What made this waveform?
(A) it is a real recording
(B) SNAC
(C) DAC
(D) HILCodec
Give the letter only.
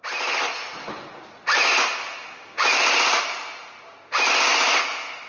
A